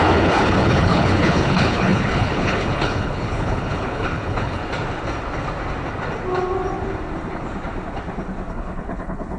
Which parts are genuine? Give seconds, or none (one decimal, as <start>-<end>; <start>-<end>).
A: 4.6-8.5